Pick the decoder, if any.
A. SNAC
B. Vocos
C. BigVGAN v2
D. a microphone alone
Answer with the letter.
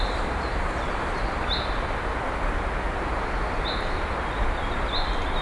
D